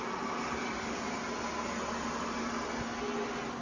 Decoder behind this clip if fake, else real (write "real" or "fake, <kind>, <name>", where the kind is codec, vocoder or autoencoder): real